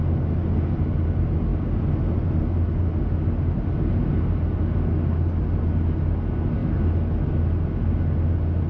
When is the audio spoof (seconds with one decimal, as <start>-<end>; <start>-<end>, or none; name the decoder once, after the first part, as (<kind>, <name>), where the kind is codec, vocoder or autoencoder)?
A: none